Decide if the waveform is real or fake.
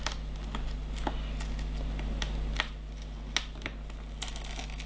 real